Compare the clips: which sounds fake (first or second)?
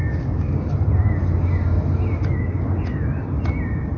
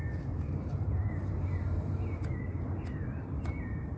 second